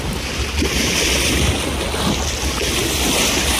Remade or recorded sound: recorded